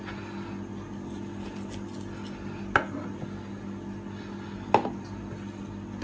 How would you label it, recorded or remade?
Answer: recorded